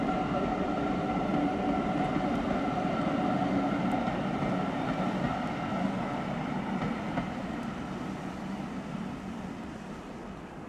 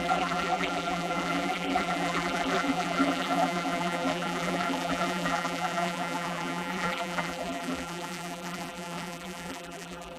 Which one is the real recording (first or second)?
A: first